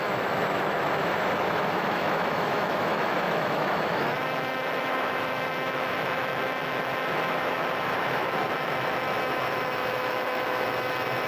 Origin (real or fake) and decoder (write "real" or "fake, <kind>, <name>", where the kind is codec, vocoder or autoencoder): fake, autoencoder, DAC-VAE